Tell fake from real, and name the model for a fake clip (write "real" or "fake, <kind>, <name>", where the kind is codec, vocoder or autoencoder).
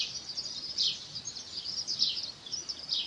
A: fake, vocoder, BigVGAN v2